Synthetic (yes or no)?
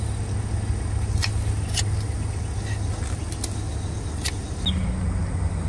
no